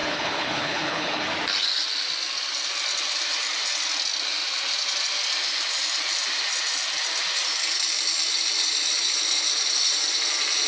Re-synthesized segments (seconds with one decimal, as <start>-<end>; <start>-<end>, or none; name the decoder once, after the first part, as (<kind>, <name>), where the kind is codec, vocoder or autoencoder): 0.0-1.3 (codec, HILCodec)